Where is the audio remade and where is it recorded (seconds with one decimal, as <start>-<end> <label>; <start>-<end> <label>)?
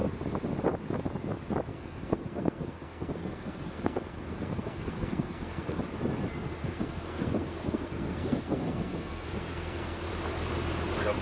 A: 0.0-1.7 recorded; 1.7-5.8 remade; 5.8-6.6 recorded; 6.6-10.1 remade; 10.1-11.2 recorded